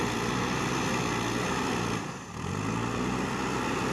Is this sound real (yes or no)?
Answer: yes